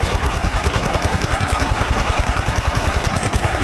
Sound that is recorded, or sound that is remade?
remade